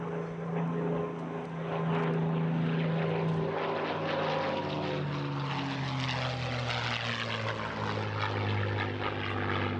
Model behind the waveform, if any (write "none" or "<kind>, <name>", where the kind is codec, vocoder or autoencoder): none